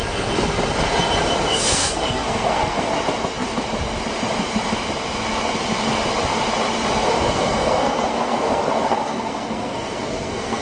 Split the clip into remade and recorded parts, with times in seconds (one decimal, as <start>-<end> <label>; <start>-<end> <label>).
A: 0.0-1.5 recorded; 1.5-2.9 remade; 2.9-7.1 recorded; 7.1-10.6 remade